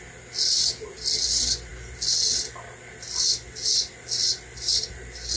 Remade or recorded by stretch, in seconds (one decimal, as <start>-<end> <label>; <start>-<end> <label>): 0.0-5.4 recorded